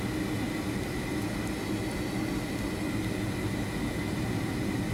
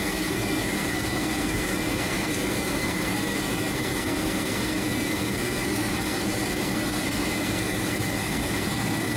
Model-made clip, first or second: second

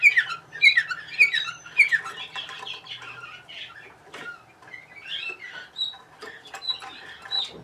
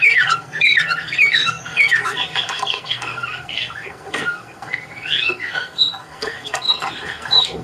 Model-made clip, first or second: second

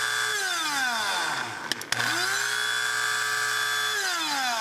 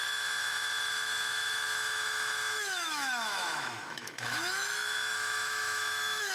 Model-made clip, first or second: second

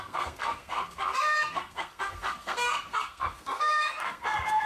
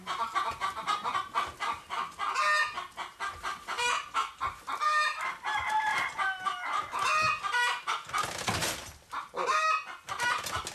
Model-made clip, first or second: first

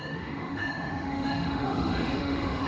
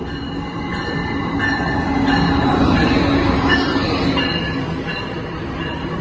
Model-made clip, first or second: first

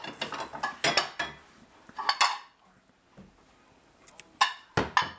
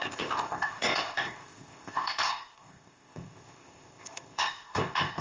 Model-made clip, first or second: second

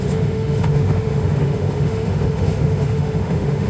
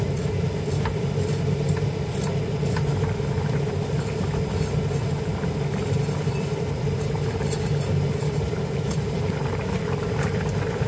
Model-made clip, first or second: first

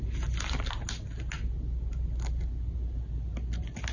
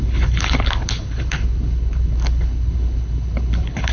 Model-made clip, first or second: second